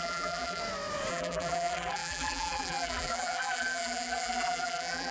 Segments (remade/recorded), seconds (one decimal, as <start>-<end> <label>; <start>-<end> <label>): 0.0-0.6 remade; 0.6-1.1 recorded; 1.1-5.1 remade